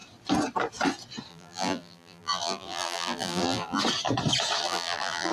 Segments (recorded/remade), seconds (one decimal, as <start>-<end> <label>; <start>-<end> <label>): 0.0-1.3 recorded; 1.3-3.8 remade; 3.8-4.6 recorded; 4.6-5.3 remade

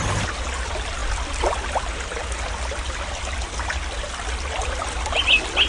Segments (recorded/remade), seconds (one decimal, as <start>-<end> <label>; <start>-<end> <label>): 0.0-5.7 recorded

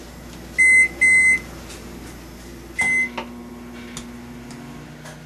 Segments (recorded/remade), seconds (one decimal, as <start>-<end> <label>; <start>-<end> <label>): 0.0-5.3 recorded

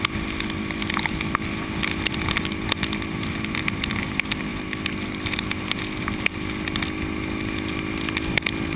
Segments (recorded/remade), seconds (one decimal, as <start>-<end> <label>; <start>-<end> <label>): 0.0-8.8 recorded